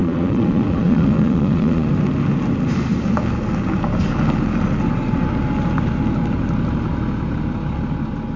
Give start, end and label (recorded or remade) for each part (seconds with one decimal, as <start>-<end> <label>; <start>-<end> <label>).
0.0-1.9 remade; 1.9-8.4 recorded